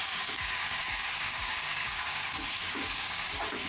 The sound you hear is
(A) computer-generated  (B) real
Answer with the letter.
A